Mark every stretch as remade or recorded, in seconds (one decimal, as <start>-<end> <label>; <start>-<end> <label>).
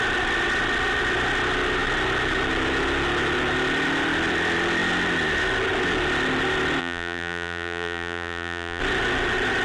0.0-6.8 recorded; 6.8-8.8 remade; 8.8-9.6 recorded